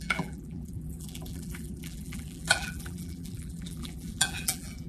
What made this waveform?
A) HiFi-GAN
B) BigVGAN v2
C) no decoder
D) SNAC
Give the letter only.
B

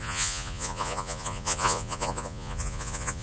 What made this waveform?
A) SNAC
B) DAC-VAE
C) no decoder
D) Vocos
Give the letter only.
D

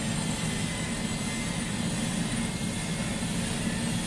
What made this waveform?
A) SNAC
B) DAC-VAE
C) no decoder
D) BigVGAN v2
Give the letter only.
C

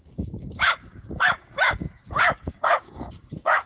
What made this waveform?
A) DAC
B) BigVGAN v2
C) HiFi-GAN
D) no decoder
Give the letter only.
A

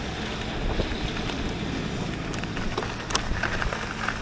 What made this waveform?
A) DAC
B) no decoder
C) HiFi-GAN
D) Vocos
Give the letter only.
B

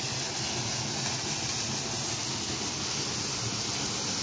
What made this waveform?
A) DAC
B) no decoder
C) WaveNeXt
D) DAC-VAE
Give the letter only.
B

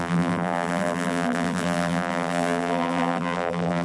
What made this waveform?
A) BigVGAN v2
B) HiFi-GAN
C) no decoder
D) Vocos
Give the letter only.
A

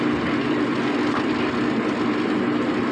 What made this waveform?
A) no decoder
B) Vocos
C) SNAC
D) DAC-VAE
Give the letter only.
A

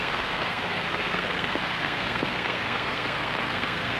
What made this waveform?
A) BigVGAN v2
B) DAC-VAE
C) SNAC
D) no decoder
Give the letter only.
C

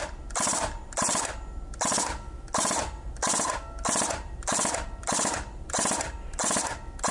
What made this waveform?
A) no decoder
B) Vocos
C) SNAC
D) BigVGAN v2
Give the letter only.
D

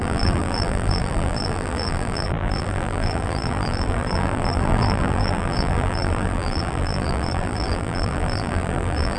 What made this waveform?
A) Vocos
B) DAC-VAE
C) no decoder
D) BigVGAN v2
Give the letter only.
D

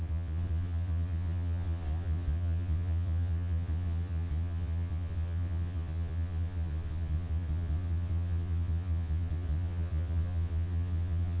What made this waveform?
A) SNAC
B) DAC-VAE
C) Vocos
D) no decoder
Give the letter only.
C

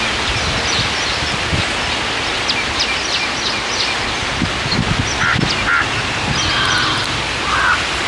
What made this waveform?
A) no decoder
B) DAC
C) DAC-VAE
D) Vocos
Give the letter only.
A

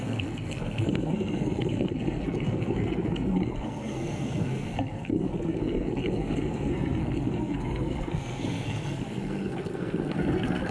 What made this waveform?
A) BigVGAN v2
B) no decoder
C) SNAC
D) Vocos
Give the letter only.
C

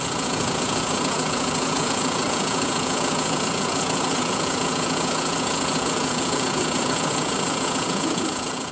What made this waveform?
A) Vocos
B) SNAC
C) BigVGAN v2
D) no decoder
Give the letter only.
A